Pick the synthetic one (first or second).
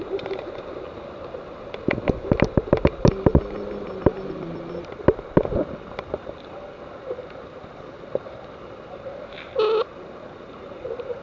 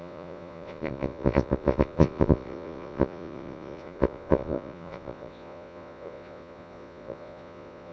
second